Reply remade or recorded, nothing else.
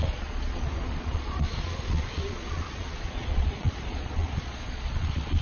remade